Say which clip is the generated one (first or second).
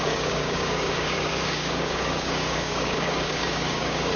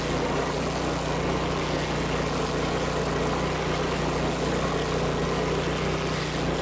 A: first